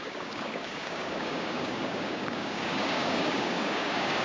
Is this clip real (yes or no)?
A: no